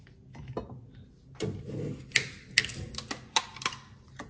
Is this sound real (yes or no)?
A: yes